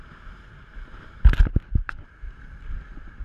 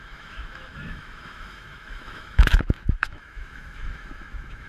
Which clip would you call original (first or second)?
first